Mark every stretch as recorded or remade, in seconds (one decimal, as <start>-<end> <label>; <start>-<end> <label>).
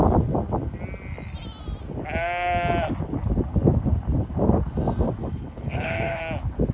0.0-5.2 recorded; 5.2-6.2 remade; 6.2-6.7 recorded